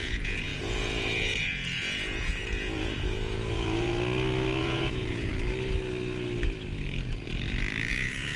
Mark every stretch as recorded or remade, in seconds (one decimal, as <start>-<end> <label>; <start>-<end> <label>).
0.0-3.9 remade; 3.9-4.6 recorded; 4.6-5.3 remade; 5.3-7.9 recorded; 7.9-8.4 remade